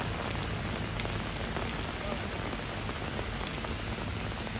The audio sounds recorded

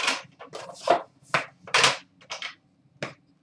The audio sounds recorded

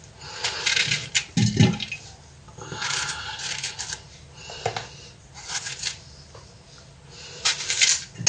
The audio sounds recorded